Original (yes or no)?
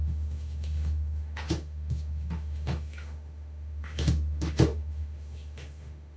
no